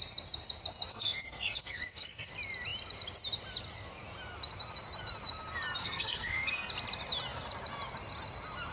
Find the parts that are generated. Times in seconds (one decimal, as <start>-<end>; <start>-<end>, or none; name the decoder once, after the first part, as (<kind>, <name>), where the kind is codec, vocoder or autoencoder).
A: 0.9-2.3 (codec, SNAC); 5.8-6.7